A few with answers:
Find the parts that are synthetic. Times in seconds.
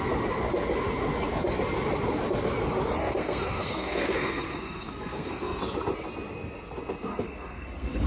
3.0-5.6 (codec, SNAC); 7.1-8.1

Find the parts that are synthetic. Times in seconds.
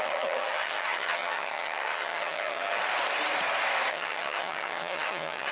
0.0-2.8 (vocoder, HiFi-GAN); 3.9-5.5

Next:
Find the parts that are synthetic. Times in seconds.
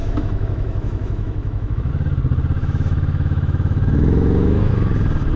0.0-1.9 (autoencoder, DAC-VAE); 2.6-4.7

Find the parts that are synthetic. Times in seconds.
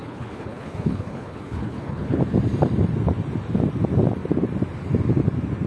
0.0-2.2 (codec, HILCodec)